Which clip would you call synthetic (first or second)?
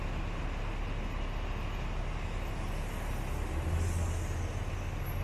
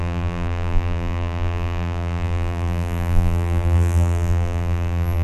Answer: second